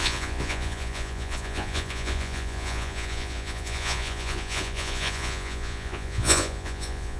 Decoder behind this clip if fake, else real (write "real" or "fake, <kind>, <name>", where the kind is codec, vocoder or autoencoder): fake, vocoder, Vocos